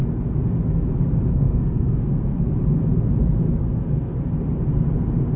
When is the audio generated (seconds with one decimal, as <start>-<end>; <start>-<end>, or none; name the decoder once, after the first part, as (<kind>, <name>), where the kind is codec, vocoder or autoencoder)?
1.3-2.5 (codec, SNAC); 3.6-4.1